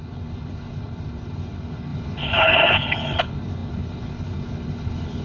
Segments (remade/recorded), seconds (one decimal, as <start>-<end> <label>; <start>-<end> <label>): 0.0-5.2 remade

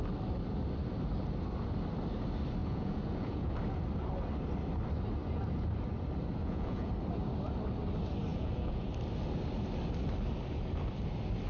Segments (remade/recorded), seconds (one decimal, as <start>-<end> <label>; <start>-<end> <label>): 0.0-2.6 recorded; 2.6-3.6 remade; 3.6-6.4 recorded; 6.4-6.9 remade; 6.9-8.3 recorded; 8.3-8.9 remade; 8.9-11.5 recorded